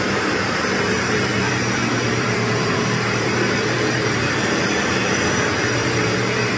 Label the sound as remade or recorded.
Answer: remade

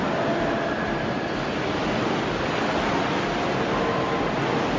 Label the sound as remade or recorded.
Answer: recorded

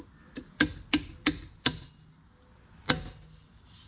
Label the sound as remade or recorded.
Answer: recorded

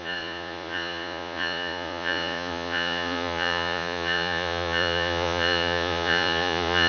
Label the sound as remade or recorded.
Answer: remade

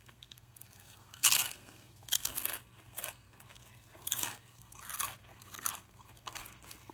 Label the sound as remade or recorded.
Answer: remade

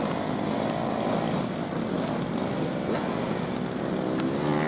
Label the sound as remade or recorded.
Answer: recorded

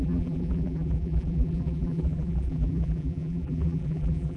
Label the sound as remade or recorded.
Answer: remade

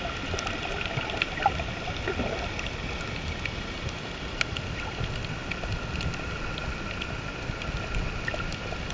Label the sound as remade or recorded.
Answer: recorded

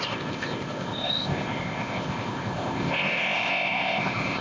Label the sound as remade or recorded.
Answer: remade